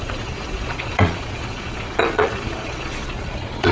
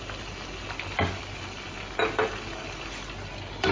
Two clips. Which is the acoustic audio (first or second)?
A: second